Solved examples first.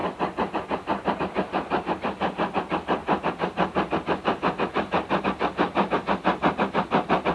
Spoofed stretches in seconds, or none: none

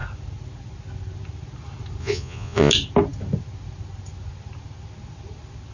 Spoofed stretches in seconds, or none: 2.0-2.7 (vocoder, Vocos)

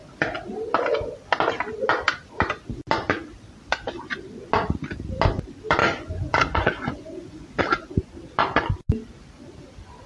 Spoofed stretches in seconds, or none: 5.8-7.6 (vocoder, Vocos)

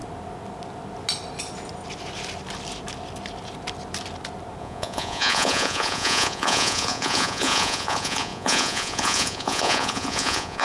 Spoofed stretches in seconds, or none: 4.6-10.6 (vocoder, Vocos)